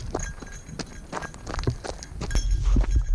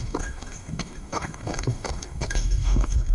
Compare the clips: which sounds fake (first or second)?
second